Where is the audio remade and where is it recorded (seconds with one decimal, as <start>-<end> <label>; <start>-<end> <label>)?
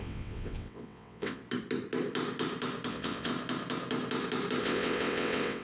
0.0-1.4 remade; 1.4-2.9 recorded; 2.9-3.3 remade; 3.3-4.6 recorded; 4.6-5.6 remade